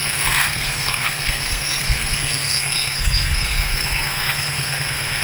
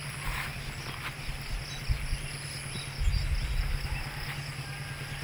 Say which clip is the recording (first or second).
second